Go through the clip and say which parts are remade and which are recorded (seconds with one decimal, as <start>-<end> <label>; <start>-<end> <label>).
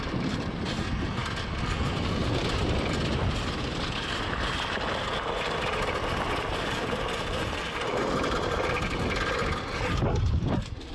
0.0-10.9 recorded